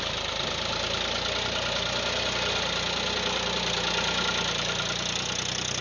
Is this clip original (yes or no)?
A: yes